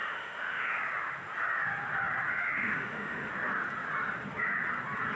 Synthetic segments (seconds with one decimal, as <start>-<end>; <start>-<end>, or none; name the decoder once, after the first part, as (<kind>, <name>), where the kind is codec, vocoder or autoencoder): 0.0-0.7 (autoencoder, DAC-VAE); 2.3-3.3